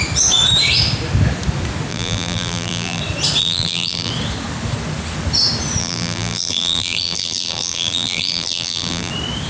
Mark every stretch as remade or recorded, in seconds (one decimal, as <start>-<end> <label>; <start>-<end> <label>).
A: 0.0-1.9 recorded; 1.9-3.0 remade; 3.0-3.4 recorded; 3.4-4.1 remade; 4.1-5.8 recorded; 5.8-9.1 remade; 9.1-9.5 recorded